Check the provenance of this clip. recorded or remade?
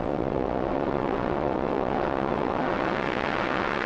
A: remade